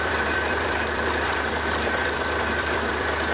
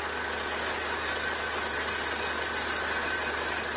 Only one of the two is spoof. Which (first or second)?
first